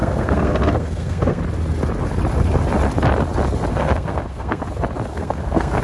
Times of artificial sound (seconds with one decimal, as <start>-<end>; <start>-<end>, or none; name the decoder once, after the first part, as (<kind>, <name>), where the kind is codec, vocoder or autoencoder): 0.0-1.4 (codec, SNAC); 3.7-4.6; 5.1-5.8